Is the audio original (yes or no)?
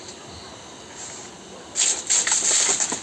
yes